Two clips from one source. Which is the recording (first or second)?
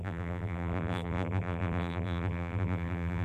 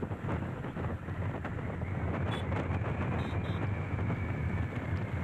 second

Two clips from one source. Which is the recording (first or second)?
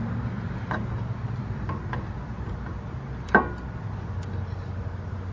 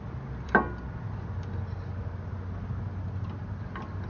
second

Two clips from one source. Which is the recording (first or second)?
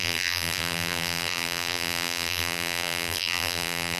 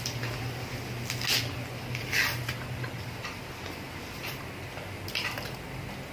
second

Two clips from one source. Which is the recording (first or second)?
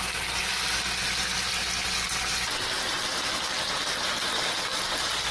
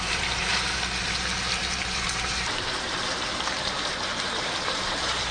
first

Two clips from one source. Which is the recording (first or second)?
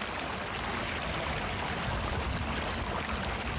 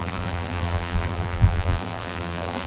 first